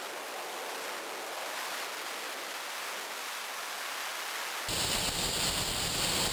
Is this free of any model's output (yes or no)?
yes